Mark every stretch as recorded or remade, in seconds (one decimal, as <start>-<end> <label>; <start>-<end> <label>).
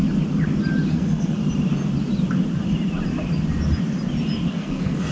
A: 0.0-0.9 recorded; 0.9-1.4 remade; 1.4-4.5 recorded; 4.5-5.1 remade